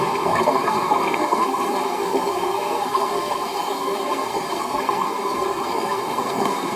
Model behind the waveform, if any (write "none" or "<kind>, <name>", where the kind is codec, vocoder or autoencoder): codec, SNAC